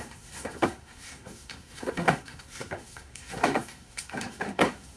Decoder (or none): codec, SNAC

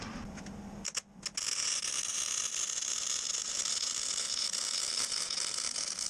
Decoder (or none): none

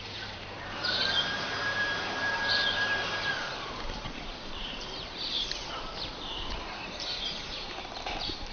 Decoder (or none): vocoder, BigVGAN v2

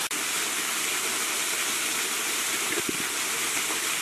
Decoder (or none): none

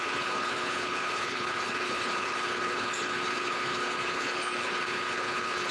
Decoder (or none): codec, HILCodec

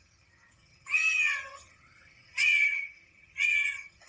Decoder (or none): vocoder, HiFi-GAN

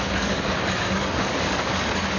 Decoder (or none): codec, DAC